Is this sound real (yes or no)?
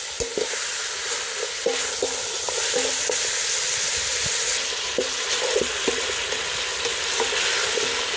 yes